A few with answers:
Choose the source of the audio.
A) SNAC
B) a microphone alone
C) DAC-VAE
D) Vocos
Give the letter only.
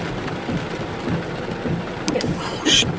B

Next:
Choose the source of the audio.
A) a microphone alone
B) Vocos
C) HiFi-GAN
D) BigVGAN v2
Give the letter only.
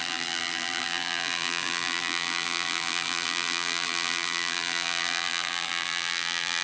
D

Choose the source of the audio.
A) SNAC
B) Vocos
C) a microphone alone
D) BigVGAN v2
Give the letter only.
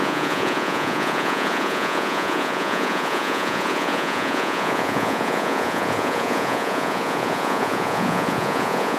B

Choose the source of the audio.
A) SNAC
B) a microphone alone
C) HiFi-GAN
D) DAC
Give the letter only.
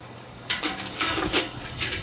D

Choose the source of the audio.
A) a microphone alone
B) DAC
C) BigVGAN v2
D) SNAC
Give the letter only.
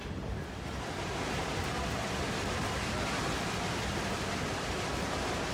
A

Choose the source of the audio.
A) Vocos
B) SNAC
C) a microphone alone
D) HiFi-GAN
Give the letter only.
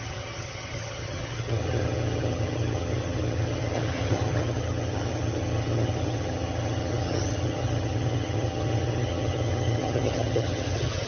D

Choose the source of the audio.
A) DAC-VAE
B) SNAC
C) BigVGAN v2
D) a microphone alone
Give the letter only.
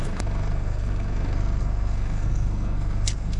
B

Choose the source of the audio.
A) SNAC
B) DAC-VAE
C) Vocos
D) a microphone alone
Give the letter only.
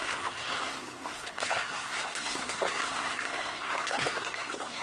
A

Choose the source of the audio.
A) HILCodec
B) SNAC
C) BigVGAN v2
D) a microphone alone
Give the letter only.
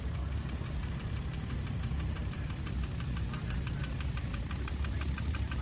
C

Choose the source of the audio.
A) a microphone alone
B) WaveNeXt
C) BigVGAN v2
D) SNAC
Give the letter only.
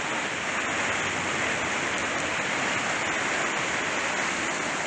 A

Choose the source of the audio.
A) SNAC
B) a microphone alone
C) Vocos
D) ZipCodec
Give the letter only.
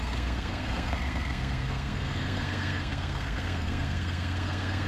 A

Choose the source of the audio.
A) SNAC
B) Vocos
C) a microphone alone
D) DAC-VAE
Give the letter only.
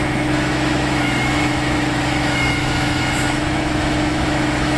D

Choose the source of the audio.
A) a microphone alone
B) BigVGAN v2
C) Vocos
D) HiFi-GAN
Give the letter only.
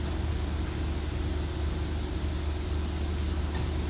A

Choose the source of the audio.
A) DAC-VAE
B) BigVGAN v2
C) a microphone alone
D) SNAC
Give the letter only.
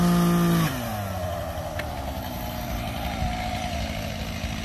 C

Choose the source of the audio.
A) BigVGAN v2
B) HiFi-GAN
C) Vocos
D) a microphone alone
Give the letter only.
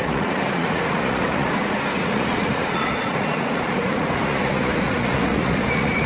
C